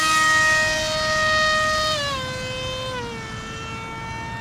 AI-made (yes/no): no